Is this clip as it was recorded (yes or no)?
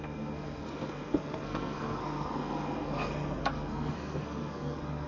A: no